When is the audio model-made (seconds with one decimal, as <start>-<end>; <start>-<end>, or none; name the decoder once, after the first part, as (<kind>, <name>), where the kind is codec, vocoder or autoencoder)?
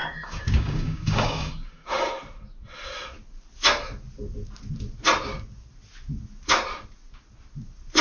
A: 0.0-2.1 (codec, DAC)